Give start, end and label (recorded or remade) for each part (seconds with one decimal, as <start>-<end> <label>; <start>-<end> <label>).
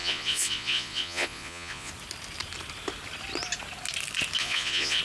0.0-1.9 remade; 1.9-4.4 recorded; 4.4-5.0 remade